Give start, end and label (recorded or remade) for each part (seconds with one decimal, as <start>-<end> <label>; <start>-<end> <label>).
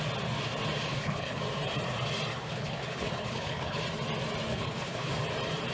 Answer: 0.0-0.9 recorded; 0.9-1.4 remade; 1.4-2.3 recorded; 2.3-3.8 remade; 3.8-4.5 recorded; 4.5-5.1 remade; 5.1-5.7 recorded